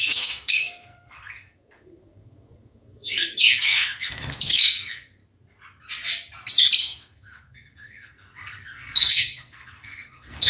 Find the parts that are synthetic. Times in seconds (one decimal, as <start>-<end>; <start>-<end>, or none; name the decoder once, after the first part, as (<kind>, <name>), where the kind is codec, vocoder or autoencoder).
0.0-5.2 (codec, SNAC); 6.8-10.5